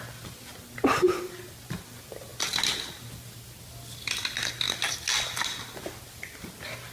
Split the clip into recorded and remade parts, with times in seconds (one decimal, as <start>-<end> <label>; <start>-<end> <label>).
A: 0.0-6.9 recorded